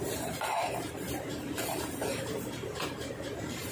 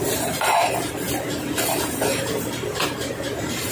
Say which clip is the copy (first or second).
first